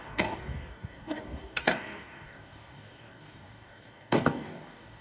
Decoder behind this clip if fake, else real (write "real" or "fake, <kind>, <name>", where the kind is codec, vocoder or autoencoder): fake, codec, DAC